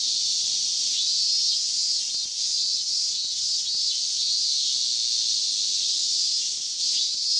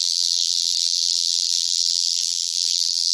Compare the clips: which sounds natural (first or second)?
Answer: first